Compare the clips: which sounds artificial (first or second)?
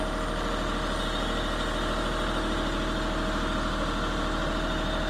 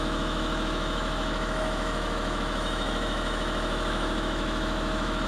second